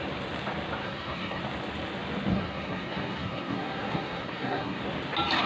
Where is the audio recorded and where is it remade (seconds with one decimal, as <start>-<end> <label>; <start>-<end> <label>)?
0.0-0.8 recorded; 0.8-1.4 remade; 1.4-2.3 recorded; 2.3-4.8 remade; 4.8-5.5 recorded